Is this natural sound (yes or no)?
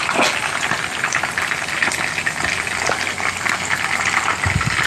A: yes